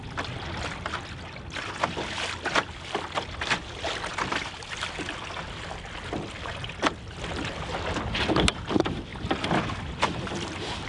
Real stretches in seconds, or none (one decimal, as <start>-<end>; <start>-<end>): 0.0-10.9